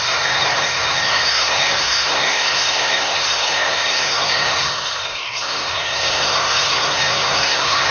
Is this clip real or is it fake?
fake